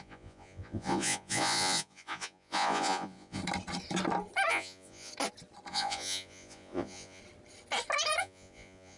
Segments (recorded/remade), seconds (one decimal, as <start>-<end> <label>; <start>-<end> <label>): 0.0-3.4 remade; 3.4-4.5 recorded; 4.5-5.1 remade; 5.1-5.7 recorded; 5.7-7.2 remade; 7.2-8.2 recorded; 8.2-9.0 remade